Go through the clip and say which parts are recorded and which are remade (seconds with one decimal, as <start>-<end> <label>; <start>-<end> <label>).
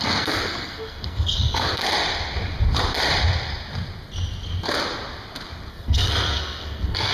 0.0-1.8 remade; 1.8-5.7 recorded; 5.7-7.1 remade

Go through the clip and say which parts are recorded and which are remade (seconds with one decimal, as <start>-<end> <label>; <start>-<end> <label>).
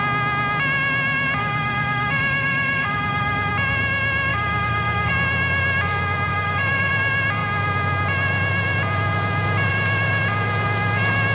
0.0-1.4 recorded; 1.4-3.5 remade; 3.5-4.3 recorded; 4.3-5.1 remade; 5.1-6.3 recorded; 6.3-6.9 remade; 6.9-11.3 recorded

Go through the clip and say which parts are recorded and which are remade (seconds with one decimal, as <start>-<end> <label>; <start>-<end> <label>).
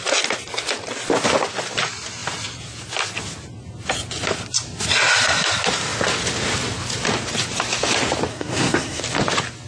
0.0-8.3 recorded; 8.3-9.0 remade; 9.0-9.7 recorded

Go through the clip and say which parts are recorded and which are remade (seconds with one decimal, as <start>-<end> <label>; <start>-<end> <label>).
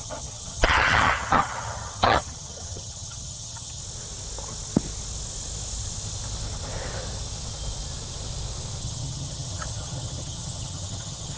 0.0-3.8 remade; 3.8-8.8 recorded; 8.8-11.4 remade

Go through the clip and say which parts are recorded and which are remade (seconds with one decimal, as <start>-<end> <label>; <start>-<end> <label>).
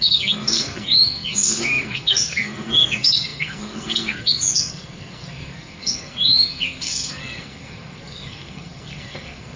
0.0-9.6 remade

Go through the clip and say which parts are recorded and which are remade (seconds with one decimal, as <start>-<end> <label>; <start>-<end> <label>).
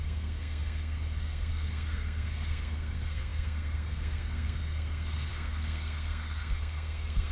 0.0-7.3 remade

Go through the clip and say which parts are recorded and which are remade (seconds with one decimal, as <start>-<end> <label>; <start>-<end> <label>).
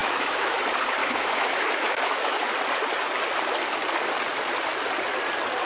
0.0-0.6 remade; 0.6-1.0 recorded; 1.0-2.4 remade; 2.4-5.7 recorded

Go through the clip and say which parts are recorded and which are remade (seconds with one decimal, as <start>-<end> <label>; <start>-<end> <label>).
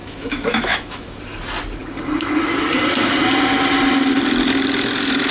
0.0-1.2 remade; 1.2-5.3 recorded